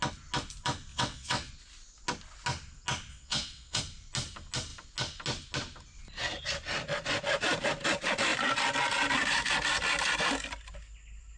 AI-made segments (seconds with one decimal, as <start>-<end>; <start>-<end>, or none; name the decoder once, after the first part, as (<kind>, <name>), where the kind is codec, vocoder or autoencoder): 0.9-1.5 (vocoder, WaveNeXt); 3.1-3.8